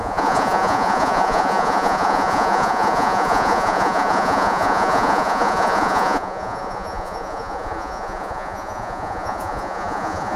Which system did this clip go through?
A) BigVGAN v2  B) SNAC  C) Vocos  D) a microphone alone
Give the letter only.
C